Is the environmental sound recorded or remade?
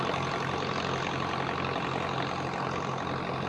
recorded